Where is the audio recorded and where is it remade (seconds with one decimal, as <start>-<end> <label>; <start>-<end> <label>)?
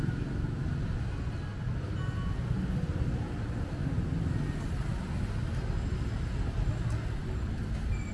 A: 0.0-8.1 recorded